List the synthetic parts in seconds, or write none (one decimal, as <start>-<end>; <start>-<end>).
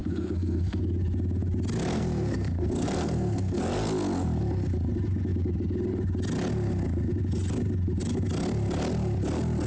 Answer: 0.0-0.8; 1.9-3.6